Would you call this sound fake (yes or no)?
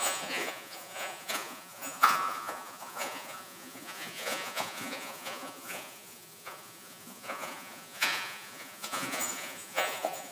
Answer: yes